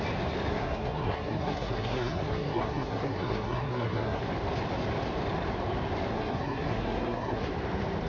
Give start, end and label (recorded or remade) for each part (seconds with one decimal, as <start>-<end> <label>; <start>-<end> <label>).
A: 0.0-0.5 recorded; 0.5-4.2 remade; 4.2-6.1 recorded; 6.1-7.5 remade; 7.5-8.1 recorded